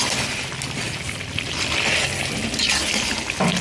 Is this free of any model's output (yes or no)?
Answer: yes